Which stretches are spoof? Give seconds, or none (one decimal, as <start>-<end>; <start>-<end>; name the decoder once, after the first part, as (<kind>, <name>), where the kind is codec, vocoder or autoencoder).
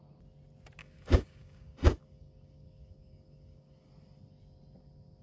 0.8-3.9 (codec, DAC)